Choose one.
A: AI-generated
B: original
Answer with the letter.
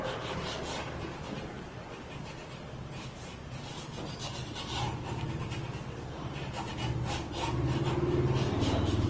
B